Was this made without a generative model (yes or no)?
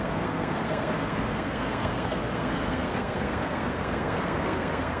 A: no